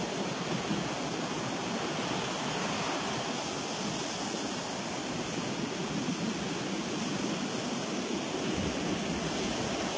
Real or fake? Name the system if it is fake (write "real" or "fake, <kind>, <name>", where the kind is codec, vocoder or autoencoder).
real